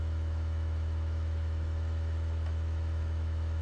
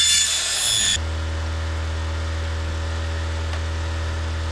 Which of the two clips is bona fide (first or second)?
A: second